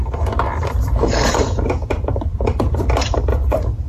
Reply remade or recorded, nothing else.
remade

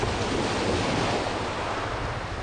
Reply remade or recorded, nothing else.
recorded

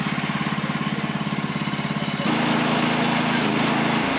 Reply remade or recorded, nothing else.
recorded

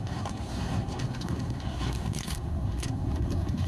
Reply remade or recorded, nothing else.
remade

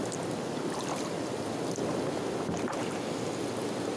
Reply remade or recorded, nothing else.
recorded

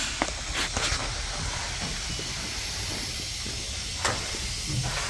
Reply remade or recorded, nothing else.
recorded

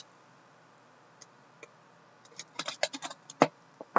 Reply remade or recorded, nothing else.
recorded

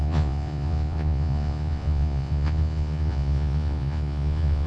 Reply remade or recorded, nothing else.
remade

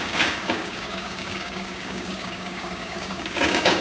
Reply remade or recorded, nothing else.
remade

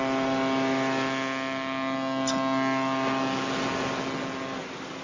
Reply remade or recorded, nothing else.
recorded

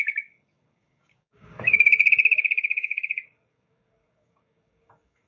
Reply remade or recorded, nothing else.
remade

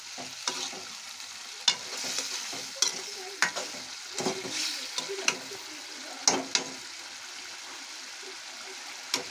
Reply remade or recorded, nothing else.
recorded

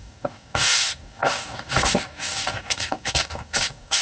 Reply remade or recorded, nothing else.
remade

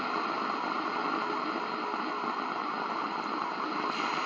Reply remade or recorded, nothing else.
recorded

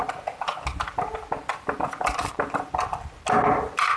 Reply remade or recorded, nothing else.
recorded